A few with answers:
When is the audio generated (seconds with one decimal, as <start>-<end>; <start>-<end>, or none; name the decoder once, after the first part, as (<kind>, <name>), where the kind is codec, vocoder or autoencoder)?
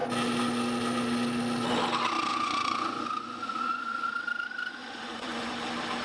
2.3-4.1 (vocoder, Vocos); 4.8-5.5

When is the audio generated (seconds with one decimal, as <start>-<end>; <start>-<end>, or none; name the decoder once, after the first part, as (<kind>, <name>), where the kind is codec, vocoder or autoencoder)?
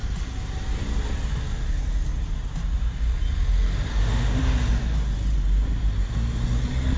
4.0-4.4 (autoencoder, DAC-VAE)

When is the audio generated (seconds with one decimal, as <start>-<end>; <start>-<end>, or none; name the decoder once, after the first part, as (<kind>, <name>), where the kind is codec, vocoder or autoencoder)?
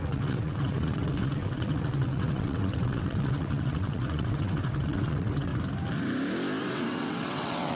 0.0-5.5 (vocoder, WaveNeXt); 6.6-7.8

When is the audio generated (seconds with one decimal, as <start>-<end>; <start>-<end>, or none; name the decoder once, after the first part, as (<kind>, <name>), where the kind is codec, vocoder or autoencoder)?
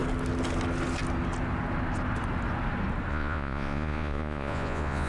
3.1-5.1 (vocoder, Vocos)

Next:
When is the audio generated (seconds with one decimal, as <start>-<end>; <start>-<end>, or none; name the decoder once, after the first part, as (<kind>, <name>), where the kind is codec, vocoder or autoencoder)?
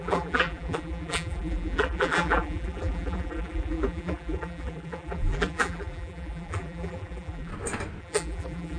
0.0-7.5 (vocoder, BigVGAN v2); 8.0-8.8